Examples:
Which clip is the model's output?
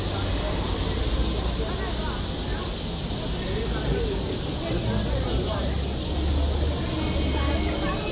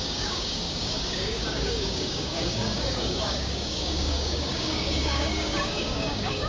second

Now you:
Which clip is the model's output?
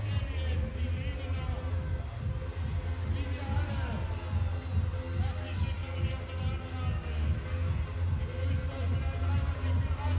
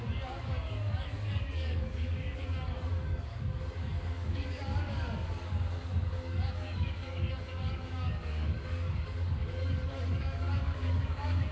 second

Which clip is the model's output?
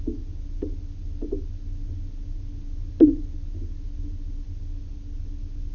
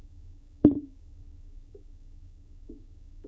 second